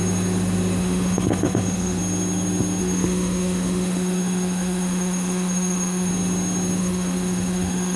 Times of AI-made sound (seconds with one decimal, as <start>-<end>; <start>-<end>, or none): 0.8-2.0; 2.8-6.1; 6.8-8.0